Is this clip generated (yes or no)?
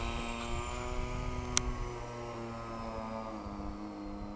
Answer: no